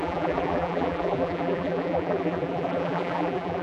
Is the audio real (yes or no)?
no